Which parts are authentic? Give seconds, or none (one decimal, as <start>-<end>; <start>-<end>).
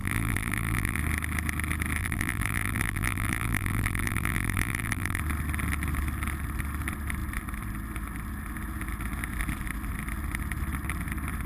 1.0-2.0; 5.2-11.5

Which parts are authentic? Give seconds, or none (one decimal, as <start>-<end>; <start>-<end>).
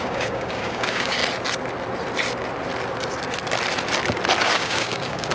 1.2-4.4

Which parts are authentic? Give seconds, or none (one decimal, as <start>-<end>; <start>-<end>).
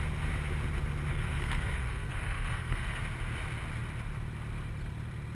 0.0-1.1; 3.0-5.3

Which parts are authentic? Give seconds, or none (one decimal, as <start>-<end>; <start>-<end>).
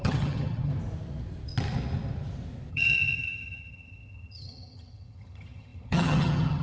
0.7-2.7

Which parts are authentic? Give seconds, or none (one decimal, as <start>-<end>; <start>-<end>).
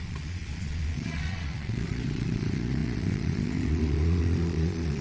none